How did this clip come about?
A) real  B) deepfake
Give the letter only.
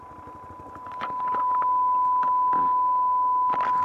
A